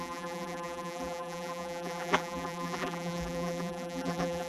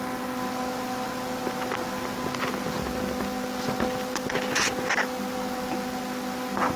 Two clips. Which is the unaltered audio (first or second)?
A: second